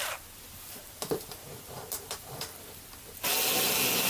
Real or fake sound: fake